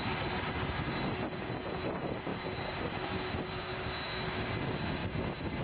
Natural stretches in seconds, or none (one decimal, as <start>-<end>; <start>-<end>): 0.0-5.6